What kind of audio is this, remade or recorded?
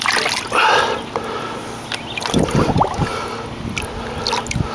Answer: recorded